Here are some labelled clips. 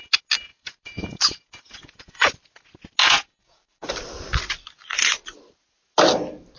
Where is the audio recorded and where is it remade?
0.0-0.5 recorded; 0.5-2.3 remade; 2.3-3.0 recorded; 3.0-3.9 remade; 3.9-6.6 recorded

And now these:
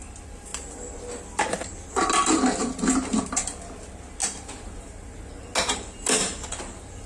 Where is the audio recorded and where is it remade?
0.0-7.1 recorded